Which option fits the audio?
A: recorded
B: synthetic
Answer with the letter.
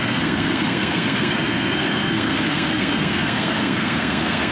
B